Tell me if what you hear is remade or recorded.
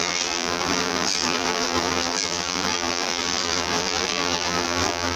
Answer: remade